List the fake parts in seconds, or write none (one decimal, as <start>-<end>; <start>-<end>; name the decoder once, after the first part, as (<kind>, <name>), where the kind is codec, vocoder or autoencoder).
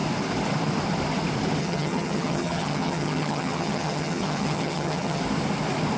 1.6-5.2 (vocoder, HiFi-GAN)